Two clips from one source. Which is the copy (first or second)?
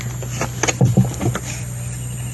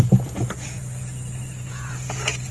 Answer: second